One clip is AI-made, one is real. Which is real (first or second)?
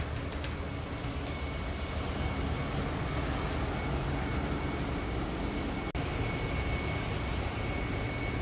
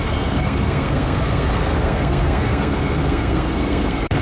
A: first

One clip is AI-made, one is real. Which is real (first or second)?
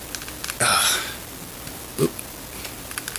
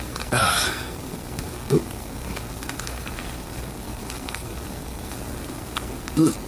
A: first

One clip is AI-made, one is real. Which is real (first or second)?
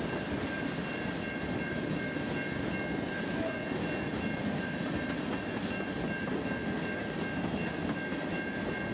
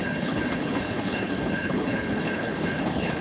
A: first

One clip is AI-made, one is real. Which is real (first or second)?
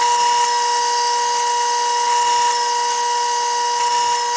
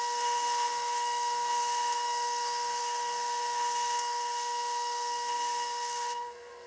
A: first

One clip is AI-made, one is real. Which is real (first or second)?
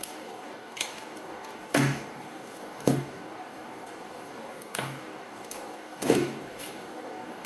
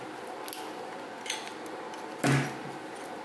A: second